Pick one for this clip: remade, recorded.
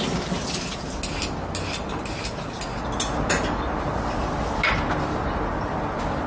recorded